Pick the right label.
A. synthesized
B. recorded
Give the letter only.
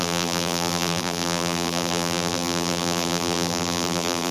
A